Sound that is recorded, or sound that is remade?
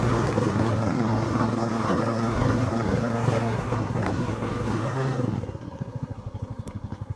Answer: remade